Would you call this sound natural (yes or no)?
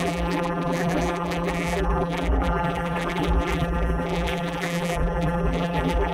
no